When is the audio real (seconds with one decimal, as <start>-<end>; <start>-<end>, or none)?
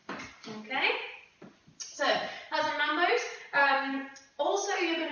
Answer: 0.0-5.1